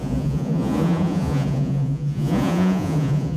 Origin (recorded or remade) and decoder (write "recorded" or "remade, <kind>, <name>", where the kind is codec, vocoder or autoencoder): remade, vocoder, Vocos